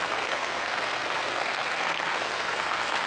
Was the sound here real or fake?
fake